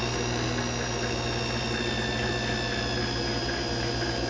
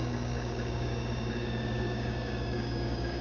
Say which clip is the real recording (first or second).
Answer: first